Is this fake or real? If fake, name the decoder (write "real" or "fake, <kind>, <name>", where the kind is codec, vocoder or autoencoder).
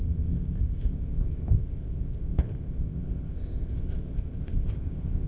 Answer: fake, codec, ZipCodec